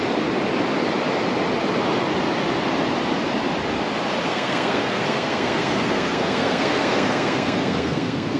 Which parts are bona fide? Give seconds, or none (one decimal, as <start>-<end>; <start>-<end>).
0.0-4.3